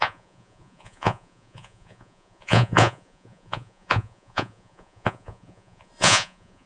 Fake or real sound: fake